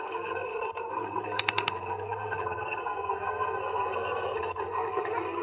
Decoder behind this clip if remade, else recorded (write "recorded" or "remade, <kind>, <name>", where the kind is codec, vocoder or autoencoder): remade, codec, SNAC